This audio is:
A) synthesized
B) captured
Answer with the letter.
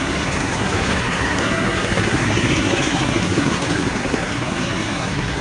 A